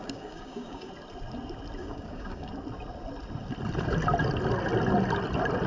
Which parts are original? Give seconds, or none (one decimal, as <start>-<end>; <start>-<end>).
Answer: 0.9-1.8; 2.5-5.7